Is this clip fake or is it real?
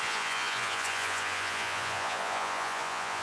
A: fake